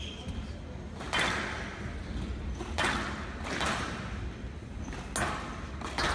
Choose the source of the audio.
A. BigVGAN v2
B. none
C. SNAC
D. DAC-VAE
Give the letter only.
B